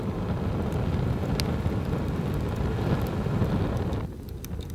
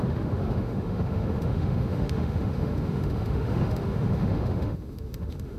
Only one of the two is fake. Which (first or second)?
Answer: second